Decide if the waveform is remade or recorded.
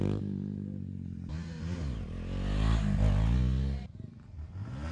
recorded